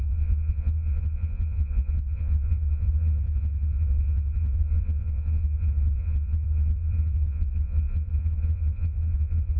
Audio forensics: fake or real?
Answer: fake